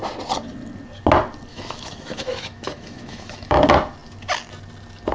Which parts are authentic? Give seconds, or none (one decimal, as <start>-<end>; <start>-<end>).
0.0-1.5; 3.6-5.1